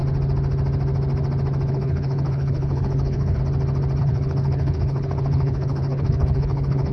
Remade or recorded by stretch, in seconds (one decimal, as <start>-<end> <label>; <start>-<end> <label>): 0.0-1.7 recorded; 1.7-3.4 remade; 3.4-4.0 recorded; 4.0-6.9 remade